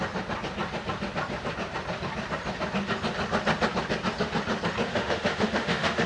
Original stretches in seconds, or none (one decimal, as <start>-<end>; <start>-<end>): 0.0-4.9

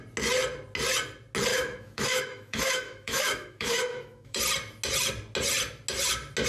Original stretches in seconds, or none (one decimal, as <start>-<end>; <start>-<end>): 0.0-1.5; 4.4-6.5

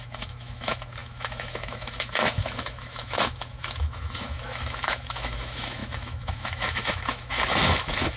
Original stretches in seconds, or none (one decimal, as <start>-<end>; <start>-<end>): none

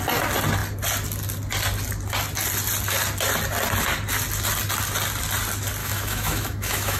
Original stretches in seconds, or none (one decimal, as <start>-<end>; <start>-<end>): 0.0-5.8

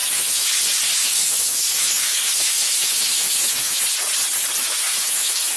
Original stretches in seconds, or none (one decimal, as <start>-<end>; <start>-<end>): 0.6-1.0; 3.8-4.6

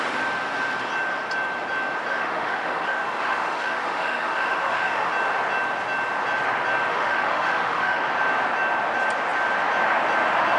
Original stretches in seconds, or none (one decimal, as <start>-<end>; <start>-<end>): 0.0-2.1; 5.1-6.9; 8.0-10.6

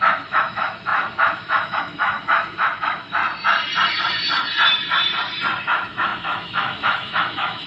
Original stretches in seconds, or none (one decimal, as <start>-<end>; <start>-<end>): 3.2-5.6